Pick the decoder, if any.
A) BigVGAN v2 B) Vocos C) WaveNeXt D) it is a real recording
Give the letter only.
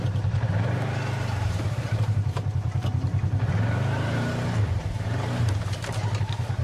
A